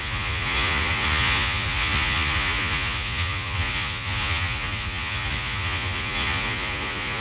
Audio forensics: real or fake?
fake